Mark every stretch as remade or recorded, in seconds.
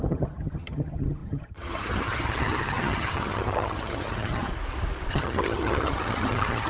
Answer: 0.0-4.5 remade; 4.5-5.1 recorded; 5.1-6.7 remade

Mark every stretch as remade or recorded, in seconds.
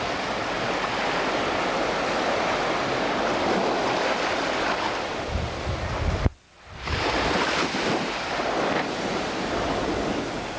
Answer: 0.0-10.6 recorded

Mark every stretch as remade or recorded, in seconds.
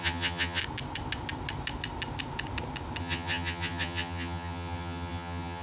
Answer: 0.0-0.6 remade; 0.6-3.0 recorded; 3.0-5.6 remade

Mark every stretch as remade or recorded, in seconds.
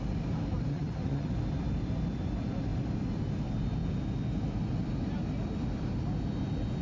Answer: 0.0-0.7 recorded; 0.7-1.3 remade; 1.3-6.8 recorded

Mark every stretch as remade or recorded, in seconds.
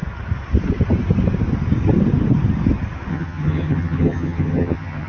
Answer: 0.0-3.1 recorded; 3.1-5.1 remade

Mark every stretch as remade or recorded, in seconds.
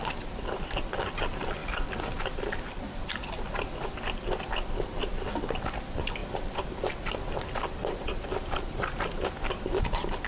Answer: 0.0-10.3 recorded